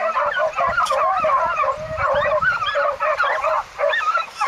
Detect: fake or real real